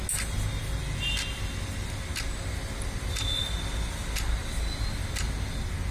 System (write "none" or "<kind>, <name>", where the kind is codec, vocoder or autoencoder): none